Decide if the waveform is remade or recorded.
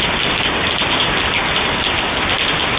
recorded